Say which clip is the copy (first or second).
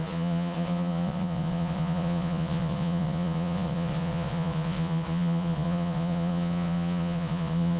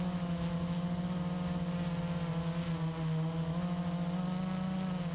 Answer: first